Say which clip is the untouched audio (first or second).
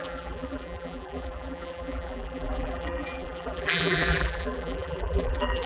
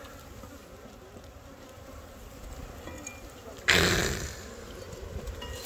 second